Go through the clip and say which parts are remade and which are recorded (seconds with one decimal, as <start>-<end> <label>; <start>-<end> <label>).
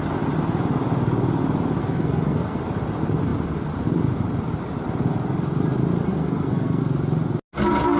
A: 0.0-1.8 recorded; 1.8-2.6 remade; 2.6-6.1 recorded; 6.1-6.8 remade; 6.8-8.0 recorded